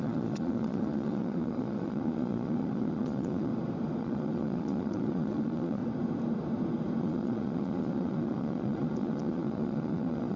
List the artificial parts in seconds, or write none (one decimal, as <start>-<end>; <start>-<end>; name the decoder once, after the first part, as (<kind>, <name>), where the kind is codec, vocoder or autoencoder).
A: 0.0-3.5 (vocoder, Vocos); 4.0-5.8; 7.0-10.4